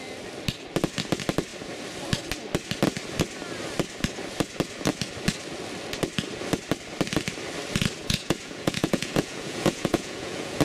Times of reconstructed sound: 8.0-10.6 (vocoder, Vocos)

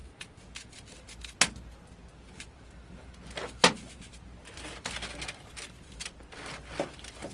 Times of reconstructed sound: none

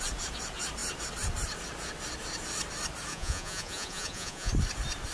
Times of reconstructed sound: 3.1-4.5 (vocoder, Vocos)